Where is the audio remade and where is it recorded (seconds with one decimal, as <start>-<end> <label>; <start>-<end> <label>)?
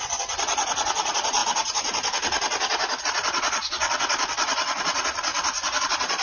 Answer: 0.0-1.4 remade; 1.4-3.0 recorded; 3.0-5.3 remade; 5.3-5.8 recorded; 5.8-6.2 remade